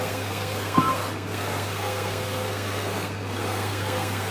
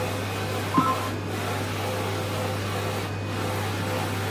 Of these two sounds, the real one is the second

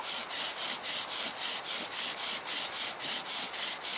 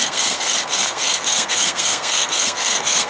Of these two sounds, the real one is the first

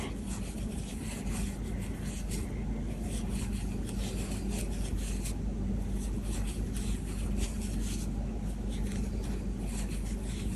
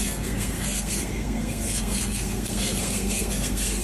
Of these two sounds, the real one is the first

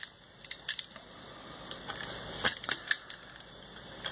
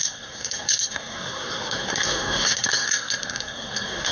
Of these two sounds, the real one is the first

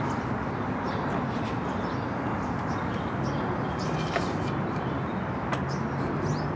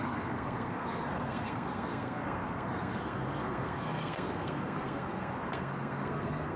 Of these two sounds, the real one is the first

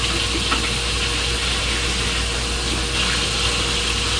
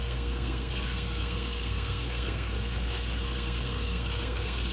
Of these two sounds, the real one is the first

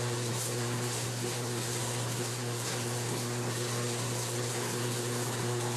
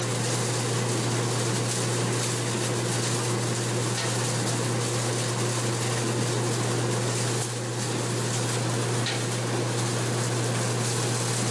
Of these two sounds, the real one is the second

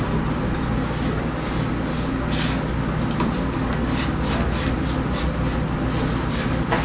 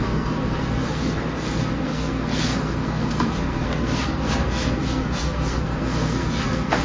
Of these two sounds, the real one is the first